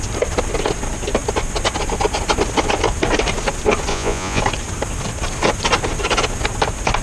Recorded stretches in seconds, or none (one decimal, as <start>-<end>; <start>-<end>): 0.0-3.9; 4.4-7.0